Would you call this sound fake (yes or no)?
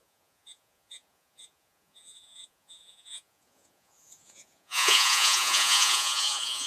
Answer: yes